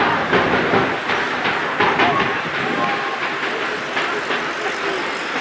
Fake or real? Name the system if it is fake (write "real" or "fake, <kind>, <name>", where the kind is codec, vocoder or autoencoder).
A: real